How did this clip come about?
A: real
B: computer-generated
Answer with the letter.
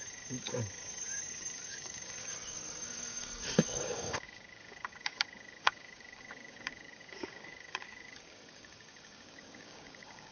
B